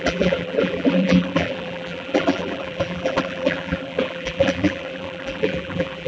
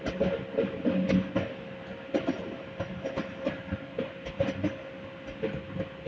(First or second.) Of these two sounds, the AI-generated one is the first